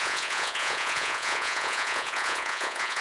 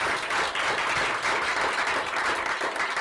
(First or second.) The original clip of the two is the second